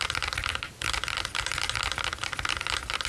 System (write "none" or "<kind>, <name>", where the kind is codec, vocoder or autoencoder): none